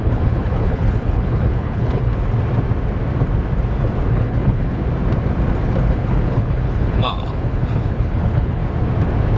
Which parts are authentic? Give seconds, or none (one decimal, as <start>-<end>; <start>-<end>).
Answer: 2.1-4.1; 4.8-5.9; 8.6-9.4